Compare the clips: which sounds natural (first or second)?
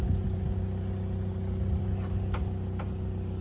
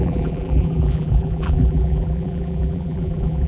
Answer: first